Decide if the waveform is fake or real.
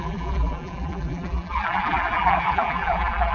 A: fake